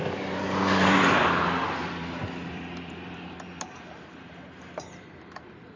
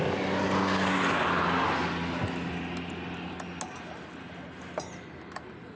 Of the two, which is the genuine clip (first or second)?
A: second